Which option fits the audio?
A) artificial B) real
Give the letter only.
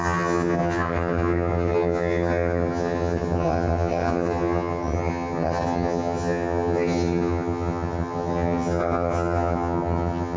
A